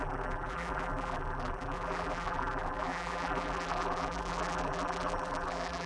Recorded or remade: remade